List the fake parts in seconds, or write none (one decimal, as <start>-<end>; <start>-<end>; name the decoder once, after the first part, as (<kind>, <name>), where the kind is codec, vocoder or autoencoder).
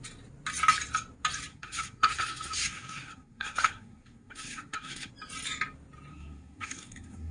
1.5-5.1 (codec, SNAC); 6.1-7.3